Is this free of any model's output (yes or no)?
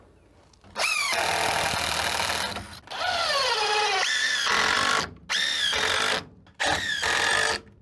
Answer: yes